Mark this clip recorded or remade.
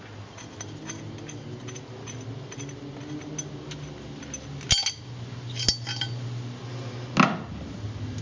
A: recorded